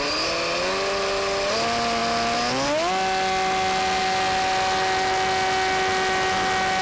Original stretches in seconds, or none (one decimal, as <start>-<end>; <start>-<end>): 0.0-6.8